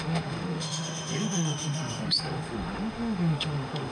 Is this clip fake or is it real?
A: fake